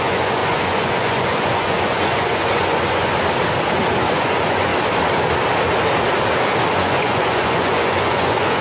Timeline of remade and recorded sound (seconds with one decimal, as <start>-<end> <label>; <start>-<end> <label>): 0.0-3.1 remade; 3.1-4.1 recorded; 4.1-4.7 remade; 4.7-6.7 recorded; 6.7-8.6 remade